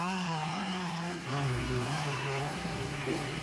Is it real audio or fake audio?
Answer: fake